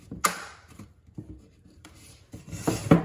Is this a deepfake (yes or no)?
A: yes